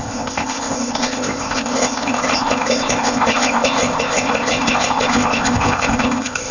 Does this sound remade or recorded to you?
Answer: remade